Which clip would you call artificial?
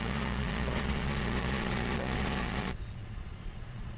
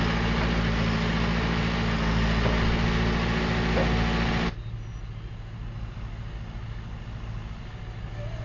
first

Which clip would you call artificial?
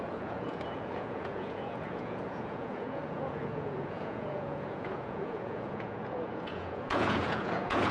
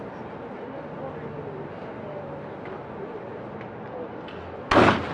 first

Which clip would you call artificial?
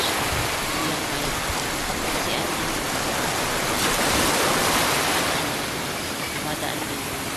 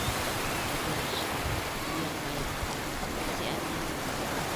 first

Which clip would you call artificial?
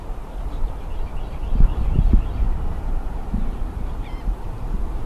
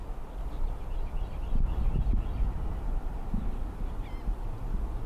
first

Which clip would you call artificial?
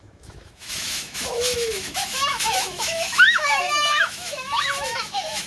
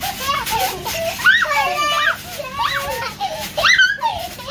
first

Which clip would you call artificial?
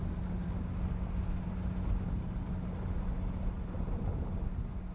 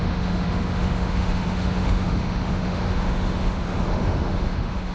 second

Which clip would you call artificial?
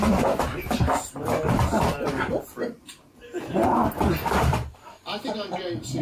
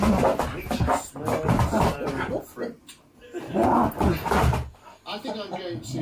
first